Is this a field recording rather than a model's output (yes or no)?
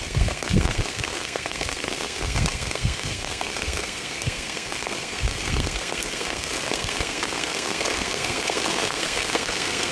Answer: no